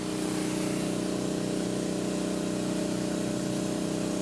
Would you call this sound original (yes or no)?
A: yes